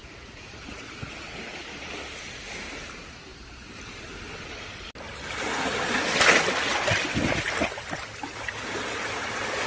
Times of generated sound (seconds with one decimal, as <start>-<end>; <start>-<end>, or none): 0.0-0.9